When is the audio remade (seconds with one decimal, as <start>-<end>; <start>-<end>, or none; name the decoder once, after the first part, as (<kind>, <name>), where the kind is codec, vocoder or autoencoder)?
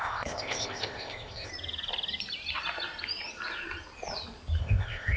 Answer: 0.0-1.5 (codec, ZipCodec); 4.6-5.2